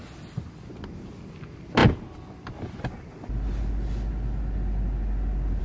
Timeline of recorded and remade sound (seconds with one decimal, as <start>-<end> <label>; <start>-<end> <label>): 0.0-5.6 recorded